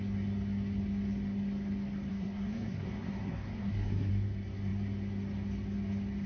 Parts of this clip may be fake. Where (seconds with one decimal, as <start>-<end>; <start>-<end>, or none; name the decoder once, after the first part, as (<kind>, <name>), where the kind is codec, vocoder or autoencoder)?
2.1-4.1 (codec, SNAC)